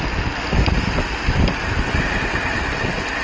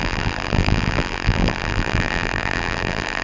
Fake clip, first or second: second